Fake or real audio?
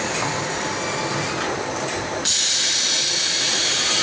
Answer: real